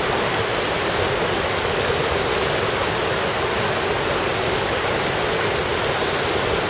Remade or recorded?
recorded